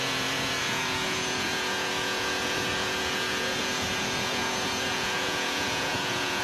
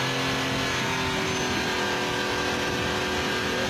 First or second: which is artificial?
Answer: first